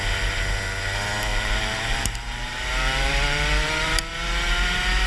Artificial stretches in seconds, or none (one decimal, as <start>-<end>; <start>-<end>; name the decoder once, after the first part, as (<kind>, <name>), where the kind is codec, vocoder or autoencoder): 1.3-4.1 (vocoder, BigVGAN v2)